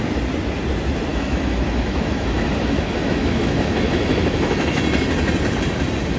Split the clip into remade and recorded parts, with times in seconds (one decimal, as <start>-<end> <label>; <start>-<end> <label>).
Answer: 0.0-1.1 recorded; 1.1-4.8 remade; 4.8-6.2 recorded